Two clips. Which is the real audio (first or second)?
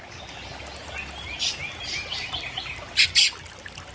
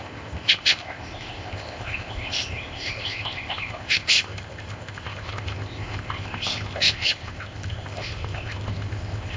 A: first